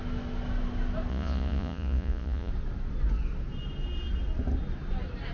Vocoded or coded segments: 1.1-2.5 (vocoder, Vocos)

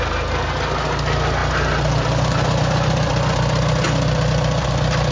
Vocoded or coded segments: none

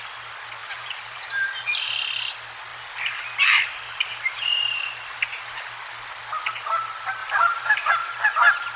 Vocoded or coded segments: 0.6-1.9 (vocoder, BigVGAN v2); 2.7-5.7; 7.2-7.9